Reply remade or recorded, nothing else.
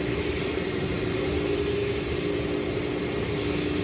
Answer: recorded